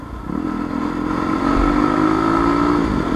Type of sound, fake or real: real